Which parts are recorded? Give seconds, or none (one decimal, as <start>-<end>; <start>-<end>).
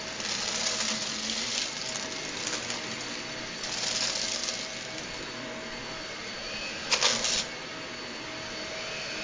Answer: 0.0-9.2